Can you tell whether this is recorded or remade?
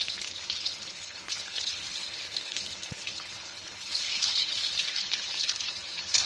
remade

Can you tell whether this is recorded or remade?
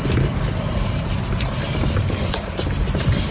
remade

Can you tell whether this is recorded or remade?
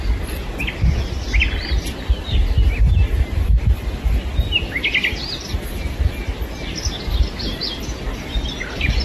recorded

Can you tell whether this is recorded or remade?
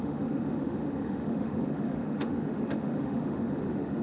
remade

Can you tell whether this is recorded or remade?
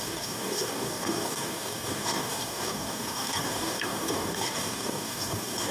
remade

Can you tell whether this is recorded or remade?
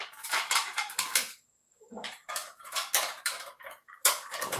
remade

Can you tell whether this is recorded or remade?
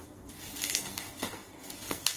remade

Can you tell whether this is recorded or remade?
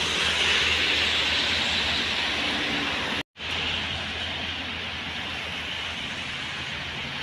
recorded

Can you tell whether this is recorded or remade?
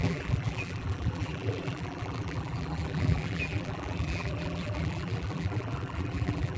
remade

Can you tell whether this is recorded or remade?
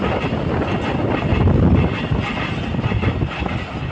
recorded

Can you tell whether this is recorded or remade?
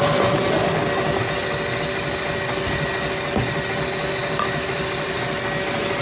recorded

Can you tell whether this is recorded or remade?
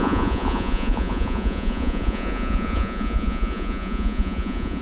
remade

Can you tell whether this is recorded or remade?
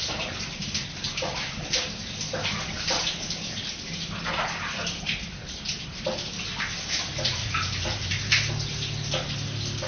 recorded